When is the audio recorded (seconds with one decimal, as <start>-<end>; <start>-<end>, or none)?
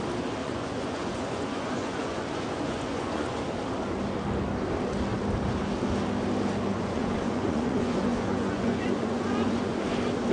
0.0-0.4; 3.4-6.7; 9.8-10.3